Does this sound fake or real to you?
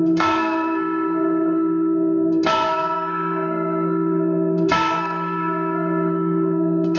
fake